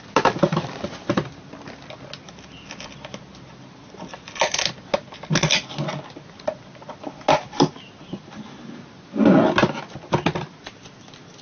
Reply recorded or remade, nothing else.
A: recorded